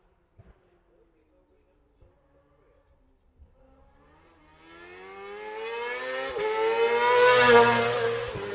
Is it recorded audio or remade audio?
recorded